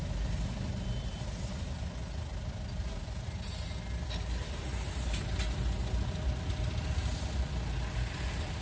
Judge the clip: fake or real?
real